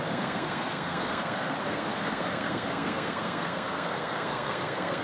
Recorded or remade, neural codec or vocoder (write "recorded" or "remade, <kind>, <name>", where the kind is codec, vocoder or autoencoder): remade, codec, SNAC